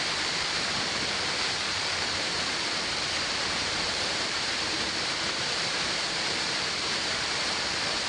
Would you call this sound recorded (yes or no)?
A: no